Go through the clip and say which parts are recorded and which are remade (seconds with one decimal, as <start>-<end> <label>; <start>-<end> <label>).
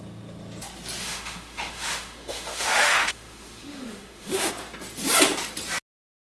0.0-1.0 recorded; 1.0-4.5 remade; 4.5-6.3 recorded